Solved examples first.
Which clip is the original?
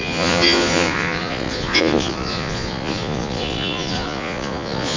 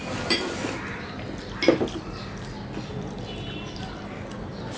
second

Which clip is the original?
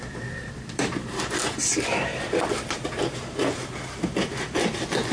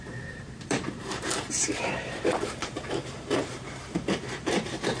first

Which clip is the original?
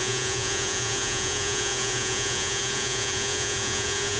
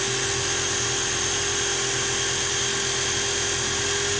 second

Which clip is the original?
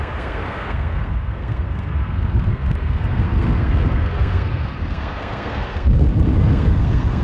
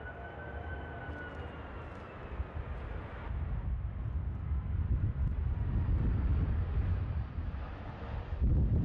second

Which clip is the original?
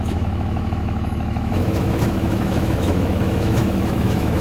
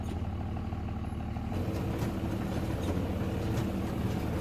second